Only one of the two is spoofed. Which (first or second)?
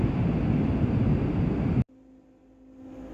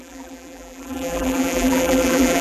second